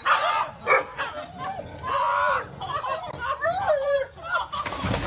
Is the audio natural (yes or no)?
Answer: yes